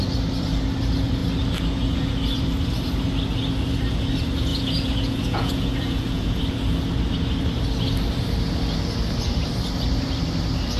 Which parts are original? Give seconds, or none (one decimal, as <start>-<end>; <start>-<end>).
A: 0.0-4.5; 6.4-10.8